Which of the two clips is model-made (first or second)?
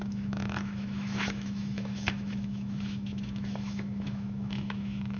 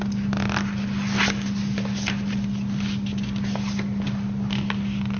first